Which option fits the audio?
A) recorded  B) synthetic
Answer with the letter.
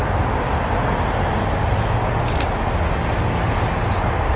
A